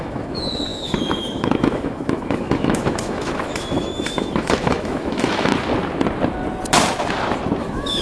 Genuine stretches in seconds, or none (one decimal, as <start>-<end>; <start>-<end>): 5.5-7.6